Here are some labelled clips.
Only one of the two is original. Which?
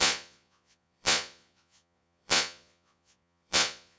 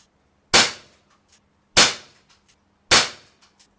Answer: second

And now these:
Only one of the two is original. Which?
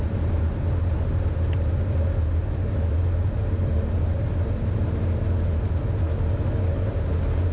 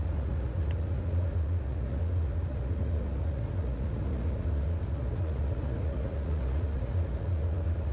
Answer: first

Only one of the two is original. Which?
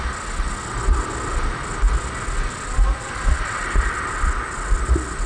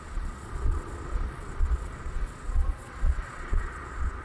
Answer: first